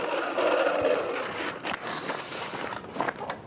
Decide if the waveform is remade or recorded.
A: recorded